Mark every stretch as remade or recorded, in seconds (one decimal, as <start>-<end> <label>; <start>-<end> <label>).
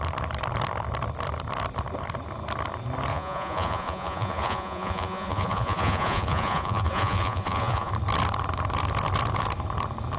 0.0-3.1 recorded; 3.1-7.9 remade; 7.9-10.2 recorded